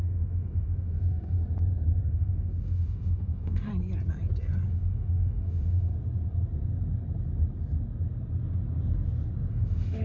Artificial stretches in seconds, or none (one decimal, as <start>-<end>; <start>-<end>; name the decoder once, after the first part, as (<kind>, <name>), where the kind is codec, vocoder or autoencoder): 0.0-1.4 (autoencoder, DAC-VAE); 2.1-3.7; 4.7-5.9; 9.5-10.0